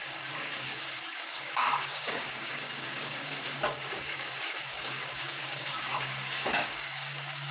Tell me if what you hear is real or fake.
fake